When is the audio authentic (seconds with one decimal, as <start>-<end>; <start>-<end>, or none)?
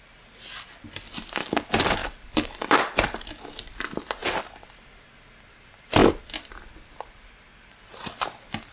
0.0-2.0; 3.3-8.7